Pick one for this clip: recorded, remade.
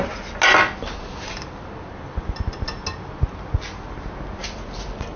recorded